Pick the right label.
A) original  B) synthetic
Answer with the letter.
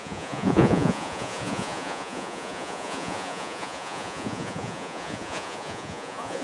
B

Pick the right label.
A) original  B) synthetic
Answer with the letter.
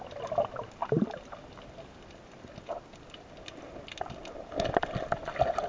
A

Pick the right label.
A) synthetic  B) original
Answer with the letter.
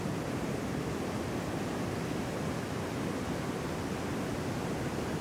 B